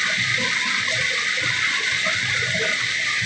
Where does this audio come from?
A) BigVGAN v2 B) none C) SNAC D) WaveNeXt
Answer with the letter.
B